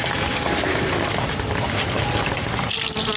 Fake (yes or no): no